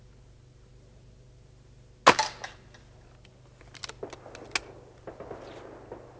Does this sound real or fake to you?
real